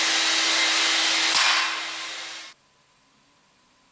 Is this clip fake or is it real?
real